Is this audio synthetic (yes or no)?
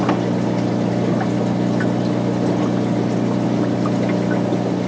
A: no